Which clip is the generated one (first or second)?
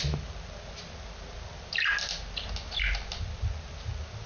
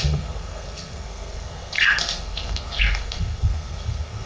second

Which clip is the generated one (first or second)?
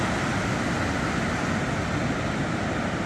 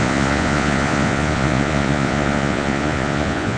second